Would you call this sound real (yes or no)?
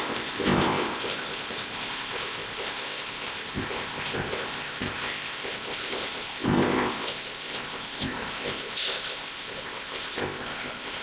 no